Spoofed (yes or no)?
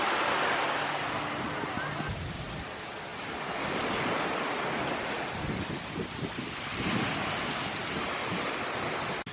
no